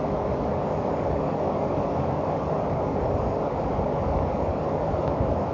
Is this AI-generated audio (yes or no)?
yes